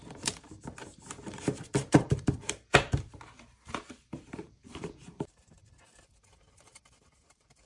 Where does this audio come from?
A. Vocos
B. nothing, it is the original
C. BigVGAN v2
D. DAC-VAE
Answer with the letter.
C